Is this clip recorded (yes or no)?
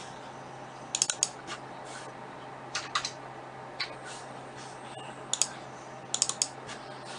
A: yes